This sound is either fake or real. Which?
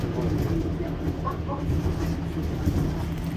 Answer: real